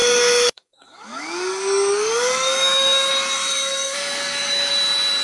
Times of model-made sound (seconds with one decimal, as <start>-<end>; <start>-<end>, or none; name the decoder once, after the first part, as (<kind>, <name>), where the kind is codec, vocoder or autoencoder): 0.0-3.1 (codec, DAC); 3.5-4.7